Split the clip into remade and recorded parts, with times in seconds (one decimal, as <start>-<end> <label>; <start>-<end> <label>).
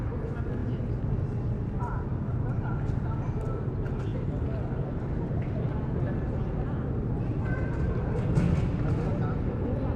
0.0-10.0 recorded